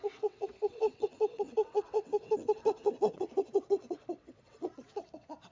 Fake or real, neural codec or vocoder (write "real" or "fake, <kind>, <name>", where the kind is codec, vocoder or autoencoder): fake, vocoder, WaveNeXt